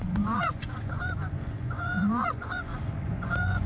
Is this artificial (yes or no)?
yes